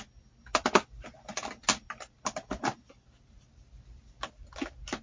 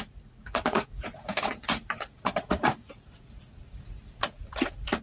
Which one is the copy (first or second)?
second